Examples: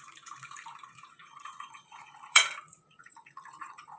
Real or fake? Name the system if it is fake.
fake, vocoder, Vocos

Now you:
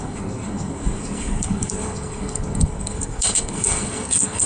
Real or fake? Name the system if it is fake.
fake, codec, SNAC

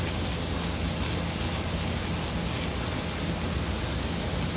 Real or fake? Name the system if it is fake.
real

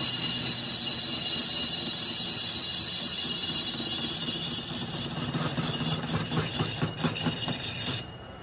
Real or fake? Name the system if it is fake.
real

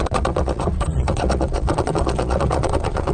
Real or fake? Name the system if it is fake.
fake, vocoder, Vocos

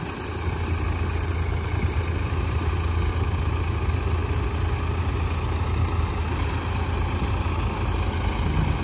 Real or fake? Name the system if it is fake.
real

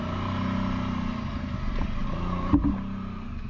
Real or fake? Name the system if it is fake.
real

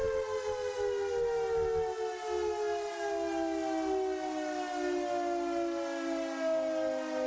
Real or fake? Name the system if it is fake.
real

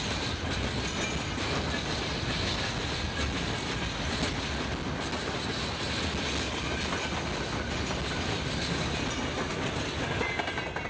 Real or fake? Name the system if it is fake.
real